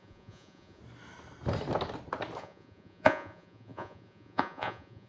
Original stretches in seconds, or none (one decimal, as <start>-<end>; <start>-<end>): 0.8-2.4